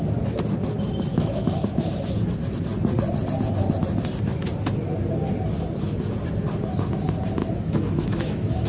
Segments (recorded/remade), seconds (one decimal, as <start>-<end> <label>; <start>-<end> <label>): 0.0-1.1 recorded; 1.1-1.9 remade; 1.9-7.4 recorded; 7.4-8.7 remade